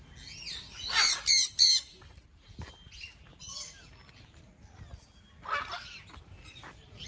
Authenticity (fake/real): real